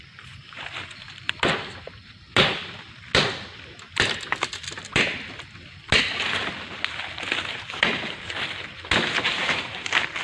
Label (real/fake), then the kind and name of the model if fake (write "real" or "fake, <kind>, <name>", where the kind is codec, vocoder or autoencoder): real